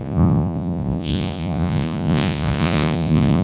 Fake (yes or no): yes